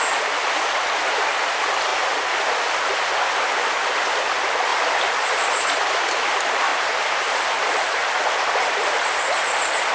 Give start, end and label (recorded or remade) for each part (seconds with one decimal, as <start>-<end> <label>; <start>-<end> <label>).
0.0-9.9 recorded

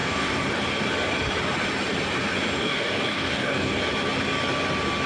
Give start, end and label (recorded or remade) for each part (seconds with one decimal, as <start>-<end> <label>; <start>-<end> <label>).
0.0-0.5 remade; 0.5-2.6 recorded; 2.6-3.8 remade; 3.8-5.1 recorded